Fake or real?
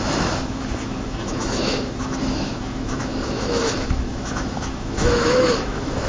fake